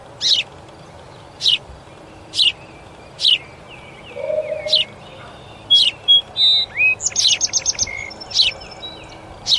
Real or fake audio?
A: real